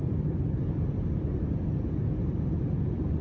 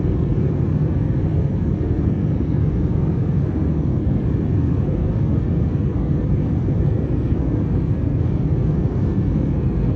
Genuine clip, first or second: first